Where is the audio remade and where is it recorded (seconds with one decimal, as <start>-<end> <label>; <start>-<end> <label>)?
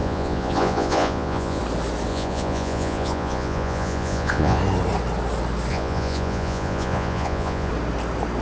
0.0-1.6 remade; 1.6-2.1 recorded; 2.1-4.6 remade; 4.6-5.7 recorded; 5.7-7.7 remade; 7.7-8.4 recorded